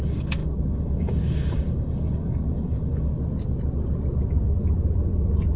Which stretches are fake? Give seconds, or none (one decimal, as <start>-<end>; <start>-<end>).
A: 0.0-3.1